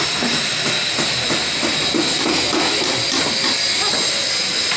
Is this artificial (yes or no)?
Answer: no